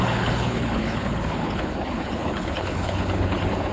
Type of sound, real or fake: fake